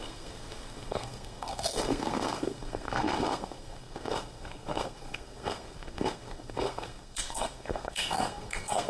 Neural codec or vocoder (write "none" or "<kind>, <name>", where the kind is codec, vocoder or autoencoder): codec, SNAC